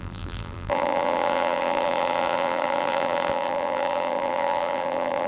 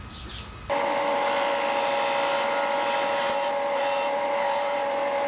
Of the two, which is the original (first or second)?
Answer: second